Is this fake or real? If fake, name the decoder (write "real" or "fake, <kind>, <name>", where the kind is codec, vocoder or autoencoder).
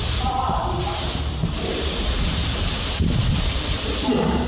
real